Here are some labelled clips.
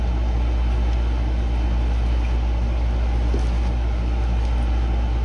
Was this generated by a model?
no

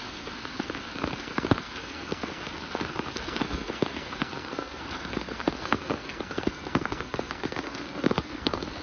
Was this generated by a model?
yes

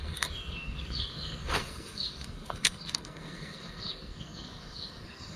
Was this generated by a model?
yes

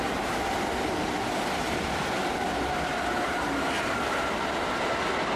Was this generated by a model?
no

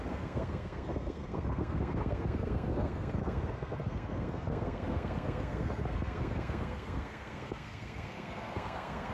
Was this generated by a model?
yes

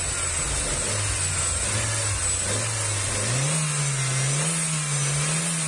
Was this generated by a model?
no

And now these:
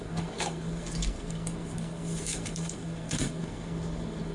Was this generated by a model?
yes